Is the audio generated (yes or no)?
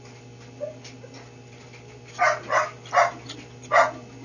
no